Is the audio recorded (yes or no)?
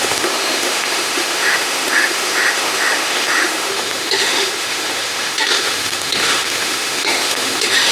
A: no